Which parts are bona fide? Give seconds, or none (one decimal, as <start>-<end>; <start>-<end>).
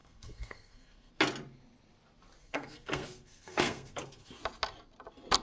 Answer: 1.1-2.4; 4.4-5.4